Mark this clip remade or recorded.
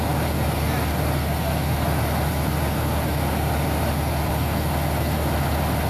recorded